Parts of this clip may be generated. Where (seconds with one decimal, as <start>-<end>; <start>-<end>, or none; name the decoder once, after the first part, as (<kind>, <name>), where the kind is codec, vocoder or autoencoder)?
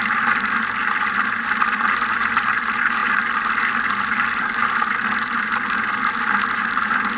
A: 0.8-2.3 (vocoder, BigVGAN v2)